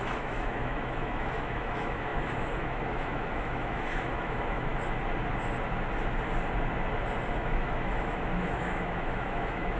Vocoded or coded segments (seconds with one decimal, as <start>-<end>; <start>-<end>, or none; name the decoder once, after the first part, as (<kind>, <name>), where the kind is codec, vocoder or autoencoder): 0.0-4.7 (autoencoder, DAC-VAE); 7.3-9.8